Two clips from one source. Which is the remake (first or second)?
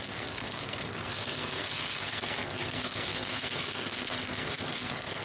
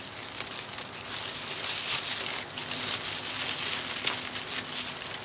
first